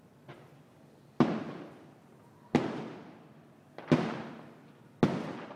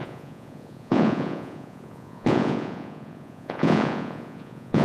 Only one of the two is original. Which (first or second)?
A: first